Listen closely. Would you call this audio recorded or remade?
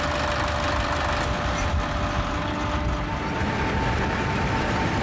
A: recorded